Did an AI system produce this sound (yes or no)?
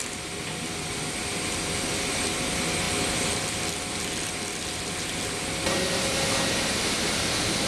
no